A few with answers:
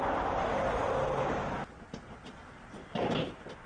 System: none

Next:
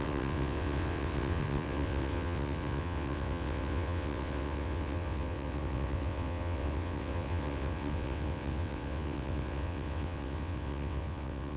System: vocoder, WaveNeXt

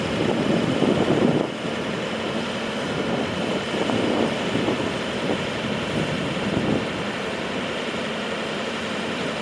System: none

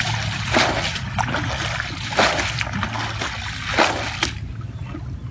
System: none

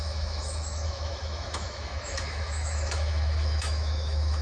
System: autoencoder, DAC-VAE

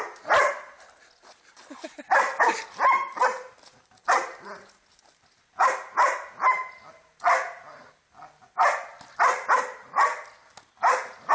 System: none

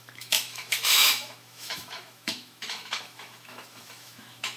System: autoencoder, DAC-VAE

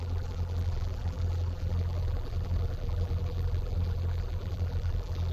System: vocoder, BigVGAN v2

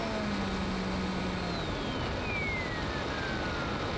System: none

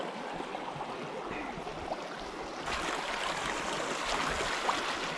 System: none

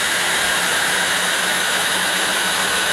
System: autoencoder, DAC-VAE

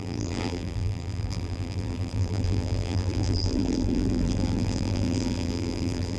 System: vocoder, BigVGAN v2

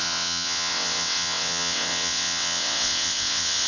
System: vocoder, WaveNeXt